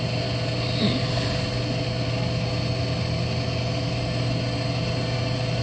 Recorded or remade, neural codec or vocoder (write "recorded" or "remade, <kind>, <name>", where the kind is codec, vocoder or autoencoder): recorded